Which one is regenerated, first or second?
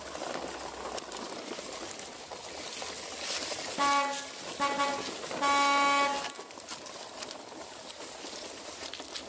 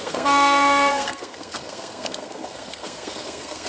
second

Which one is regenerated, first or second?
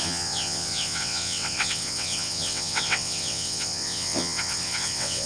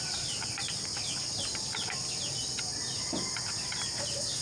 first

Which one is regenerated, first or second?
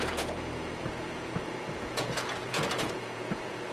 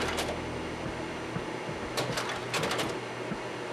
first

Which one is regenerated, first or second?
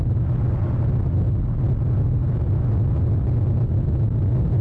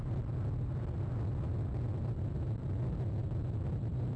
second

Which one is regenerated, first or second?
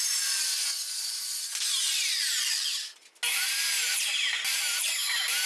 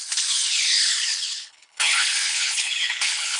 second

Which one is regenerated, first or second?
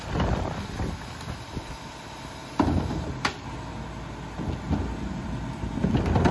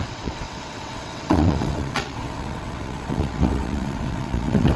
second